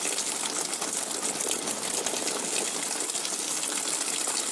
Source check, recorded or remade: recorded